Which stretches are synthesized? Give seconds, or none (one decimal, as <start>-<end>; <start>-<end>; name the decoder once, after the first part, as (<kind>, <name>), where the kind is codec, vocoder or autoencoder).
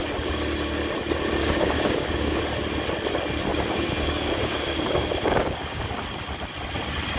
1.4-2.4 (codec, DAC); 3.5-5.9